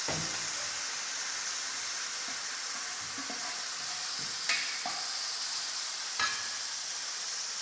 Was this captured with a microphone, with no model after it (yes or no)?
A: yes